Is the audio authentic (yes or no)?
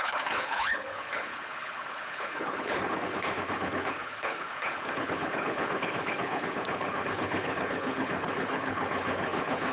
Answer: no